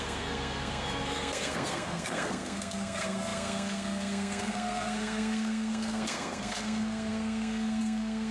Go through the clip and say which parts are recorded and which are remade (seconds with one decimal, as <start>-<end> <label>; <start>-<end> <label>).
0.0-8.3 remade